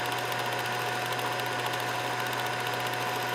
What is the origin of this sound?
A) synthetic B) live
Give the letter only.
B